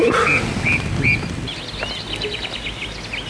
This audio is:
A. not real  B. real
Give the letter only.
B